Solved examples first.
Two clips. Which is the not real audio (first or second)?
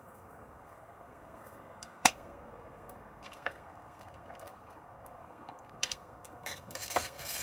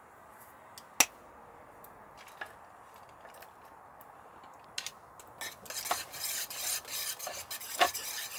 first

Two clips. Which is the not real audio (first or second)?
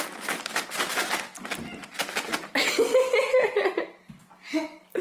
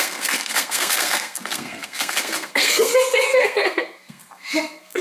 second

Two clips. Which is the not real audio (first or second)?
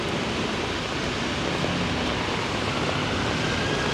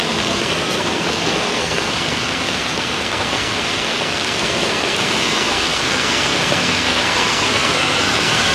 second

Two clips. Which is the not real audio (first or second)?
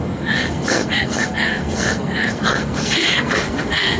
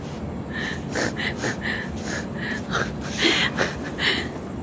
first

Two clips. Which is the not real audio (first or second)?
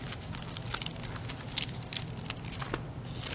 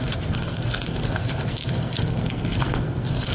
second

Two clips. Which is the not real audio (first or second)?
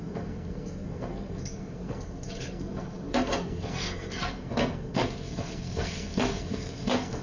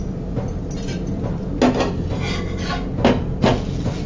first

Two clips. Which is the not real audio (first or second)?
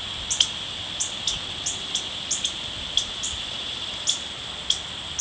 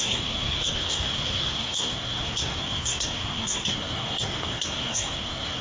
second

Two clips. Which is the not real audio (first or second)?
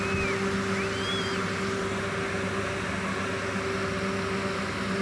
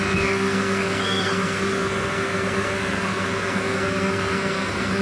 second